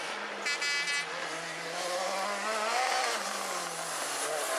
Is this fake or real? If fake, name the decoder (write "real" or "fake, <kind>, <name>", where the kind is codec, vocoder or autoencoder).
real